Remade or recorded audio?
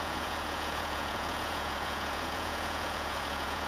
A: remade